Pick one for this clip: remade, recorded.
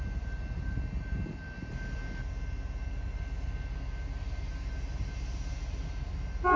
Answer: recorded